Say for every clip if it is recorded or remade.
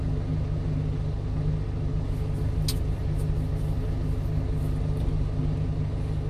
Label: recorded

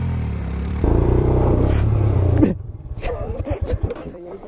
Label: remade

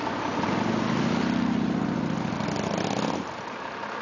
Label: recorded